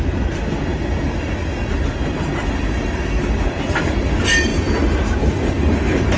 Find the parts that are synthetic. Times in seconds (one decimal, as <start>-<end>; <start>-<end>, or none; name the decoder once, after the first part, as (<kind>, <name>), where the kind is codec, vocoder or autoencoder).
none